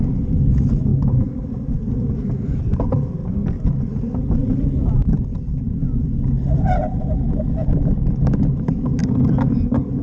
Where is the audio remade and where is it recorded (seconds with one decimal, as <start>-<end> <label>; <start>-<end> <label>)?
0.0-0.9 recorded; 0.9-3.3 remade; 3.3-9.0 recorded; 9.0-9.5 remade; 9.5-10.0 recorded